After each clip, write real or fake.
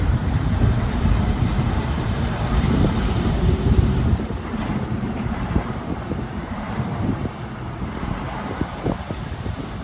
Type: fake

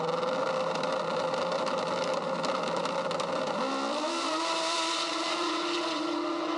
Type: fake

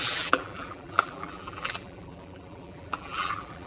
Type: fake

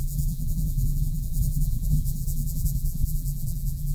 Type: fake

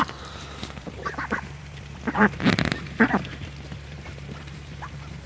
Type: fake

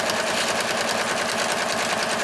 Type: real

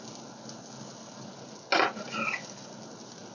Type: real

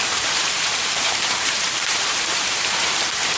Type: fake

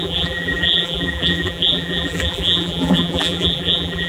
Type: fake